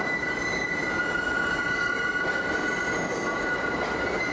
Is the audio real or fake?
real